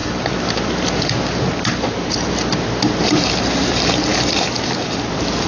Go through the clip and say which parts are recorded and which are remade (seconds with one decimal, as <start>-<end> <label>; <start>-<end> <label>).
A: 0.0-5.5 recorded

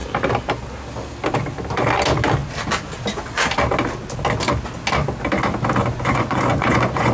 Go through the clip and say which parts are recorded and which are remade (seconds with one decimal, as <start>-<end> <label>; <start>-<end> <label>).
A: 0.0-5.8 recorded; 5.8-7.1 remade

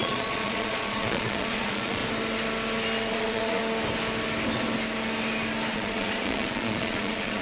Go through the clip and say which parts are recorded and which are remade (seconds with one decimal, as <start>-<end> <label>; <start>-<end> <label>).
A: 0.0-2.0 remade; 2.0-3.1 recorded; 3.1-3.6 remade; 3.6-5.7 recorded; 5.7-7.4 remade

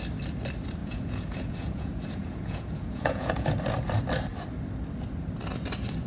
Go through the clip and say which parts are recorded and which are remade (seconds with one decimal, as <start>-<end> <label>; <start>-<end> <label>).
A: 0.0-0.8 recorded; 0.8-3.5 remade; 3.5-6.1 recorded

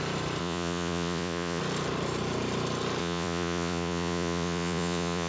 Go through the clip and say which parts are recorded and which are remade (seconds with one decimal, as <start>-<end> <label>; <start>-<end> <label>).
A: 0.0-0.4 recorded; 0.4-1.6 remade; 1.6-3.0 recorded; 3.0-5.3 remade

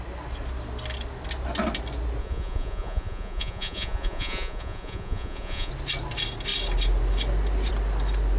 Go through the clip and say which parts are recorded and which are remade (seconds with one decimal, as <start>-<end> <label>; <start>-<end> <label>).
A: 0.0-2.2 recorded; 2.2-5.7 remade; 5.7-8.4 recorded